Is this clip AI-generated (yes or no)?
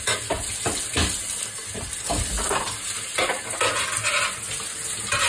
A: no